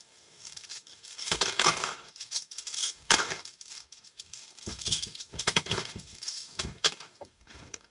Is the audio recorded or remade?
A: remade